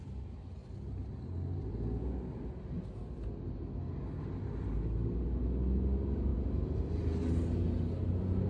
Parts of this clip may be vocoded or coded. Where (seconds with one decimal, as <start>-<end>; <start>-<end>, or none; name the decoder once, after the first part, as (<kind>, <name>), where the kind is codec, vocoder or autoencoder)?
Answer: none